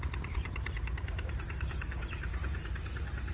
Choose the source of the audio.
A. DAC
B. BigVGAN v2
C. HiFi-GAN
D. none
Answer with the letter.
B